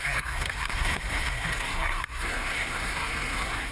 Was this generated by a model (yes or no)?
yes